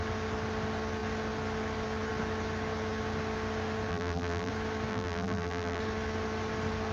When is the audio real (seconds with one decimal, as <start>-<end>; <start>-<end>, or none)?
0.0-3.9; 4.5-4.9; 5.8-6.9